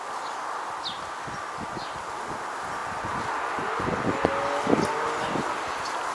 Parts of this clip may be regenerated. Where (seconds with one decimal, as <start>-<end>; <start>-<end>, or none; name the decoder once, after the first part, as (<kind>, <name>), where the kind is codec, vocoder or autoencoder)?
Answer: none